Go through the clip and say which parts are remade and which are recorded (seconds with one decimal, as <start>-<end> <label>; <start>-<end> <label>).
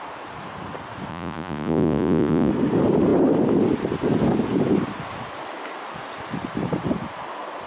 0.0-1.1 recorded; 1.1-2.5 remade; 2.5-7.7 recorded